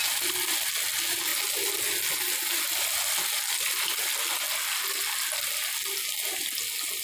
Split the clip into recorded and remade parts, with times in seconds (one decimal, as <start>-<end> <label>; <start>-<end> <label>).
0.0-7.0 recorded

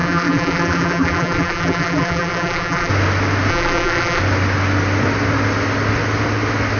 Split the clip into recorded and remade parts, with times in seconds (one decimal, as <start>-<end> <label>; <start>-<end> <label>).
0.0-2.9 remade; 2.9-3.5 recorded; 3.5-4.2 remade; 4.2-6.8 recorded

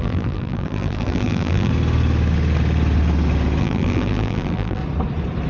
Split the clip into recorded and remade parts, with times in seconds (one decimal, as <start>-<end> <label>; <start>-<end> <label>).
0.0-1.7 remade; 1.7-3.6 recorded; 3.6-4.8 remade; 4.8-5.5 recorded

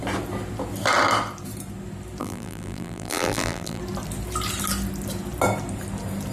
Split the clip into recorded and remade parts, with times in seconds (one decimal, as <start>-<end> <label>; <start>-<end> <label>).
0.0-2.2 recorded; 2.2-3.8 remade; 3.8-6.3 recorded

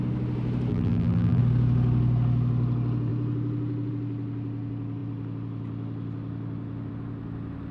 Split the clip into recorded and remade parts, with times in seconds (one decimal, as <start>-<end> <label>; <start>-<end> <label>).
0.0-0.7 recorded; 0.7-1.4 remade; 1.4-7.7 recorded

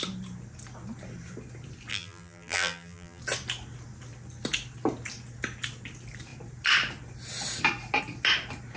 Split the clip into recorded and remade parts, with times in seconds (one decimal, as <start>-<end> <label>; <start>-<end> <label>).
0.0-1.9 recorded; 1.9-3.2 remade; 3.2-8.8 recorded

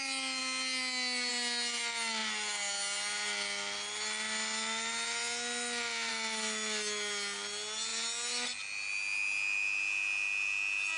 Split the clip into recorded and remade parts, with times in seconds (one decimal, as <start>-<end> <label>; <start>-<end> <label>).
0.0-11.0 recorded